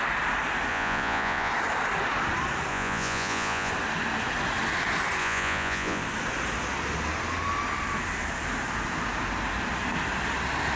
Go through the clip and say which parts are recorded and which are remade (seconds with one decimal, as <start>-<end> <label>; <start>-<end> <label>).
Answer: 0.0-0.7 recorded; 0.7-1.5 remade; 1.5-2.7 recorded; 2.7-3.7 remade; 3.7-5.2 recorded; 5.2-6.0 remade; 6.0-10.8 recorded